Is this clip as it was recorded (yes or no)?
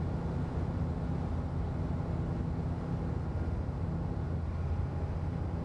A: yes